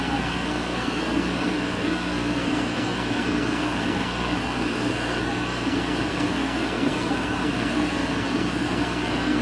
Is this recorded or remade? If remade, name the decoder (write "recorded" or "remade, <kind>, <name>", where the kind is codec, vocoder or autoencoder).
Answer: remade, codec, SNAC